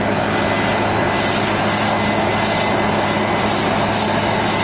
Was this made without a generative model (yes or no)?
yes